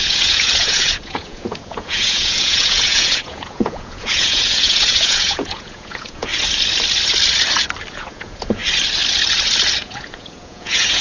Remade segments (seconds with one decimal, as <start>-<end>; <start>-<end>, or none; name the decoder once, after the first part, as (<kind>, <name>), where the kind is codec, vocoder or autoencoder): 0.0-6.3 (vocoder, Vocos); 7.9-8.6; 9.8-11.0